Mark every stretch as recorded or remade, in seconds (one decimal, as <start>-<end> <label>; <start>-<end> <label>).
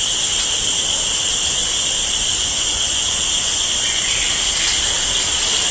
0.0-1.6 recorded; 1.6-4.1 remade; 4.1-5.7 recorded